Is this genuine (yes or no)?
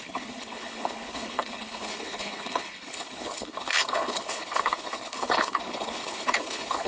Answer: no